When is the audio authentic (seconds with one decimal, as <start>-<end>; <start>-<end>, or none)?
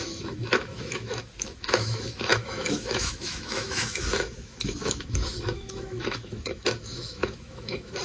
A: none